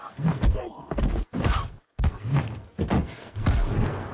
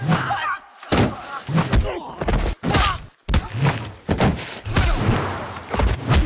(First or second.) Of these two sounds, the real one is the second